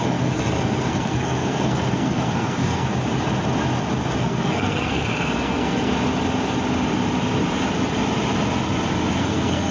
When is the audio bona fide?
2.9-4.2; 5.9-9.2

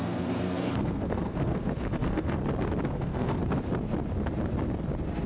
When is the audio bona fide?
2.4-2.9; 3.4-5.3

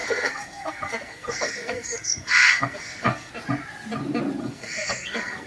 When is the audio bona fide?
3.3-4.4

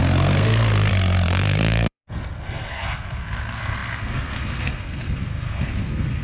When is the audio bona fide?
none

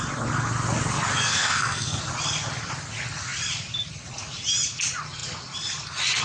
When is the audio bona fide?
0.0-1.1; 2.0-6.2

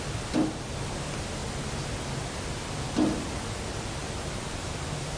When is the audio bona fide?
0.0-5.2

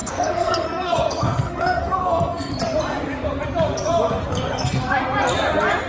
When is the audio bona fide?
2.5-4.3; 5.0-5.9